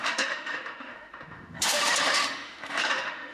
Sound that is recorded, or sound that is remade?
remade